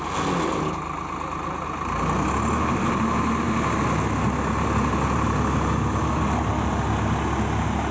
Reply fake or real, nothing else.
real